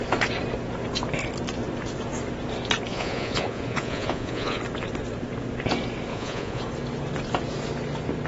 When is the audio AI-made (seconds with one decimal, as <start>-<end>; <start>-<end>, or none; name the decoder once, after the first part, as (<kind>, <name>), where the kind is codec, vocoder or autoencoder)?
2.9-4.6 (vocoder, Vocos); 6.1-6.6